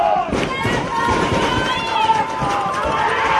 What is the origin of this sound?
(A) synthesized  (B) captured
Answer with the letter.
A